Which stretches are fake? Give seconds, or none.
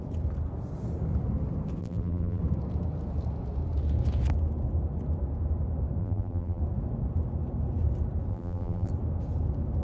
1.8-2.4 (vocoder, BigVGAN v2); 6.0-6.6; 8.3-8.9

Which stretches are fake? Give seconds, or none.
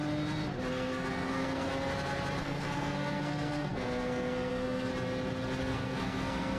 0.7-1.7 (codec, SNAC); 2.4-4.9; 5.6-6.6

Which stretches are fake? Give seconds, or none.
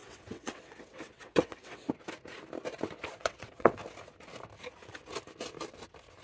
0.0-1.9 (vocoder, WaveNeXt); 3.2-3.8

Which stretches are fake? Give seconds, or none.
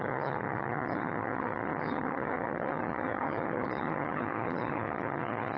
0.0-5.6 (vocoder, HiFi-GAN)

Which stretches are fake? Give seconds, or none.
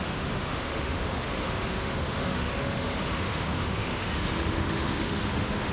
0.0-5.7 (autoencoder, DAC-VAE)